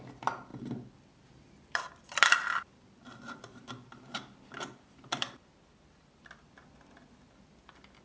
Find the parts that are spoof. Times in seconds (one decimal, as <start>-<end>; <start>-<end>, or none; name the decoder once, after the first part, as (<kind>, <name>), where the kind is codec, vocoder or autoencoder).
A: 0.5-3.2 (vocoder, BigVGAN v2); 3.6-5.4